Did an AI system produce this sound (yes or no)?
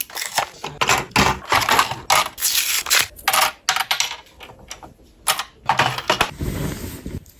no